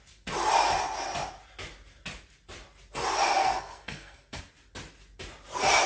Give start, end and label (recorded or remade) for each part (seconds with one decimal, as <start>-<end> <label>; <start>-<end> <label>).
0.0-3.4 recorded; 3.4-4.4 remade; 4.4-5.9 recorded